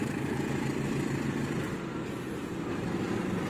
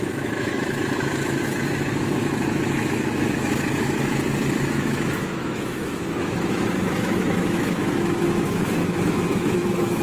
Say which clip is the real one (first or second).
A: first